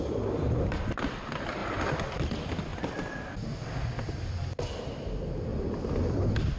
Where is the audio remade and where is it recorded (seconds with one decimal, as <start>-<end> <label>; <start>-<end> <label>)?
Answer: 0.0-6.6 recorded